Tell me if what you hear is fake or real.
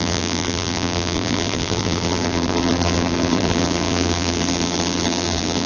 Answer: fake